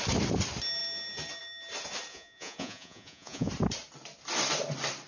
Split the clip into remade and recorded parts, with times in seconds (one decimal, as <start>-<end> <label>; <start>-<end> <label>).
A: 0.0-2.1 recorded; 2.1-3.5 remade; 3.5-5.1 recorded